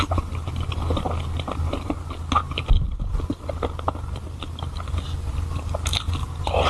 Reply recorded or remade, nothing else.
recorded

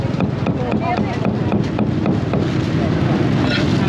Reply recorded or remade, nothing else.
recorded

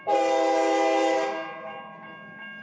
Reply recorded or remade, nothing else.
recorded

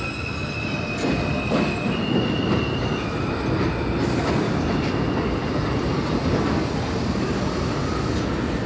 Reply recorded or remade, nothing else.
recorded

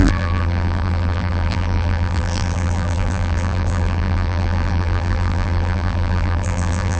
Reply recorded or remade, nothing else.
remade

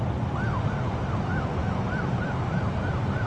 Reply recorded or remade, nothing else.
recorded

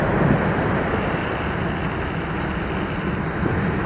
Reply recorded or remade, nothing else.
recorded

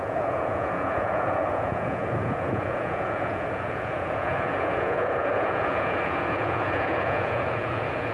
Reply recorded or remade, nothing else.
remade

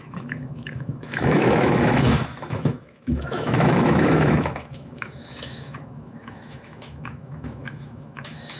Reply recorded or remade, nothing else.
remade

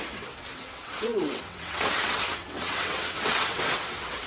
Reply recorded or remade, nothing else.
remade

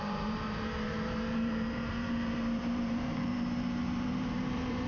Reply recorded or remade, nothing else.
remade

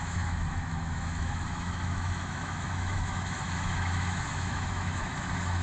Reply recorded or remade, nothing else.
remade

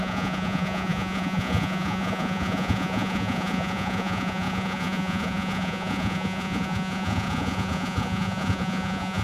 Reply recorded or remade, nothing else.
remade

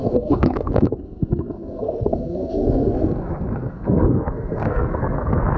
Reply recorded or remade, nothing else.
remade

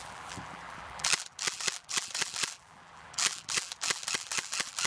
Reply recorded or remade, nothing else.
remade